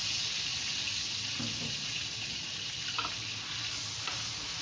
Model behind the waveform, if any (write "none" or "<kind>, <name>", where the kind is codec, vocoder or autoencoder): none